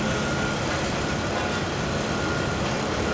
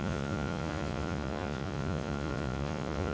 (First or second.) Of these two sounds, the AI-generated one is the second